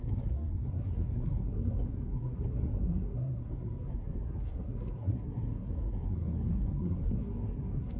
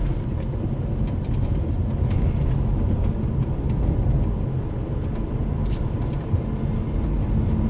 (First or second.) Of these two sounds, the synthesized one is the first